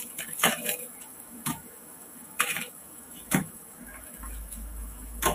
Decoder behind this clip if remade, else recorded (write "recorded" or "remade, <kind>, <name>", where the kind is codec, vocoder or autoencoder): remade, autoencoder, DAC-VAE